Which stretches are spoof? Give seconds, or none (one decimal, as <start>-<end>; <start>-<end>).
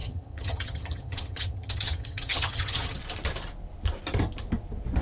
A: 0.0-3.0